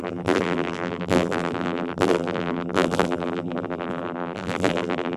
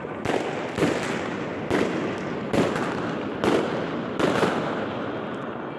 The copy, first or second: first